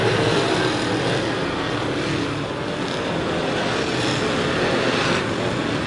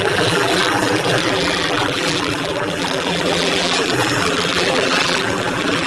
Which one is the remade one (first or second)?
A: second